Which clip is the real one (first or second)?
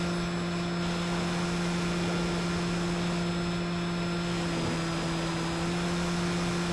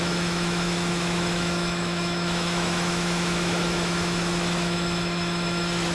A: first